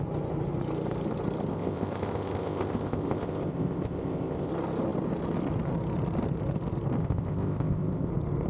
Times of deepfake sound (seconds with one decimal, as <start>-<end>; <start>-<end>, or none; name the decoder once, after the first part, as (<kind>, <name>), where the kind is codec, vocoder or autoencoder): 1.5-4.5 (codec, ZipCodec); 7.0-8.1